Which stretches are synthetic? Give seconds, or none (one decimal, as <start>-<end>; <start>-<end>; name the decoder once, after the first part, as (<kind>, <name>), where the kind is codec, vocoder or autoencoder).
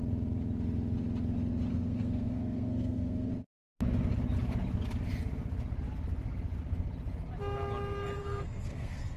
1.7-3.3 (codec, SNAC); 8.2-9.2